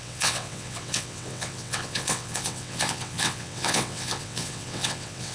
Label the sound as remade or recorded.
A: remade